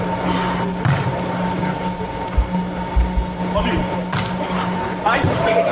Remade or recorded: recorded